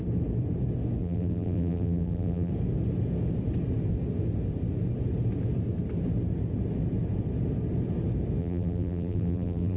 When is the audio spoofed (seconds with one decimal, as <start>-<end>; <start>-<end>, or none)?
1.0-2.5; 8.4-9.8